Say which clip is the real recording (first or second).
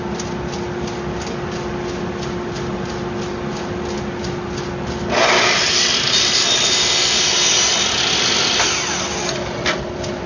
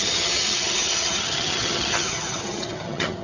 first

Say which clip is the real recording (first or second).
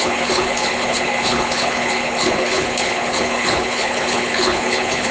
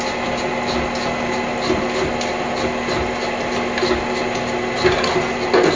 second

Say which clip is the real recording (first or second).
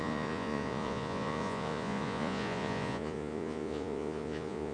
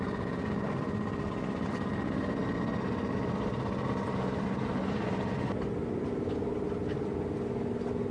second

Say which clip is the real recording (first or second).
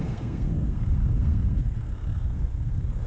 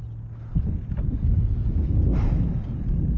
second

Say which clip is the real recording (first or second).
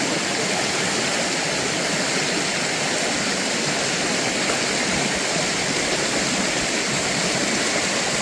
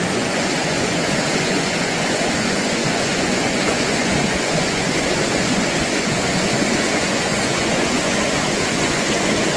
first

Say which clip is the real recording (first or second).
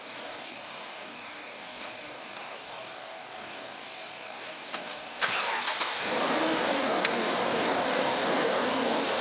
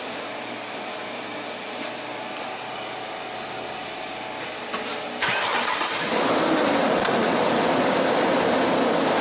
second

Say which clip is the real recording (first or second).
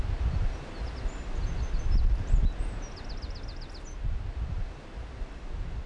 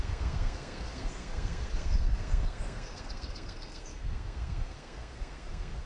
first